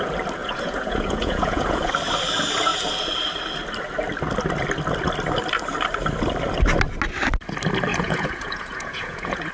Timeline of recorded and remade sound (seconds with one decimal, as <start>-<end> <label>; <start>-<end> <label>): 0.0-0.4 recorded; 0.4-1.9 remade; 1.9-7.9 recorded; 7.9-9.5 remade